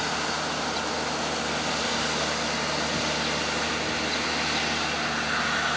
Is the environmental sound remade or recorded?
recorded